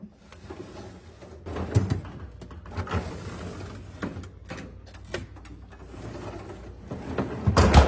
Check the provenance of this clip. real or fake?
real